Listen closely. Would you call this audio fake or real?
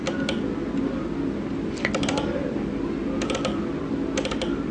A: real